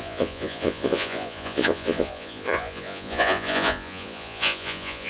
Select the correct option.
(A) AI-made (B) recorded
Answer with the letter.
A